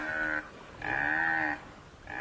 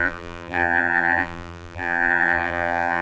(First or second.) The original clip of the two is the first